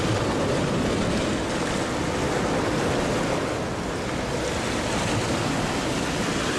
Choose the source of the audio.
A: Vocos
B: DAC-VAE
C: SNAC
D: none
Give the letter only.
D